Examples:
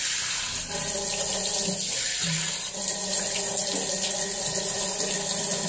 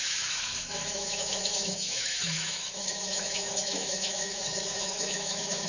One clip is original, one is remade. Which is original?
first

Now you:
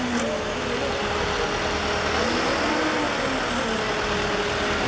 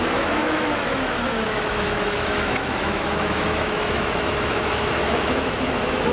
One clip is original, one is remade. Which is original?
first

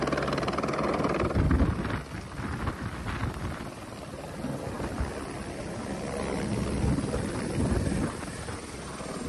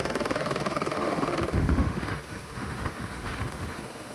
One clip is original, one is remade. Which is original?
first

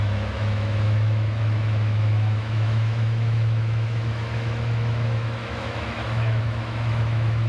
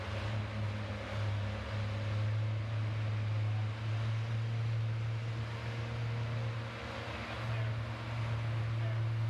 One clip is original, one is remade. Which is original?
second